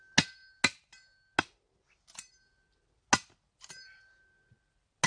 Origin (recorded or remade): recorded